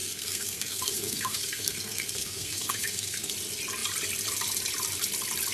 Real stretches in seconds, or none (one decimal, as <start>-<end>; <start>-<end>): 3.3-5.5

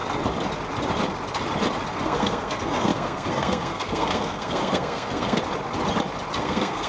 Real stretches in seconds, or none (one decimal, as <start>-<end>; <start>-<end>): 0.0-1.9; 5.4-6.4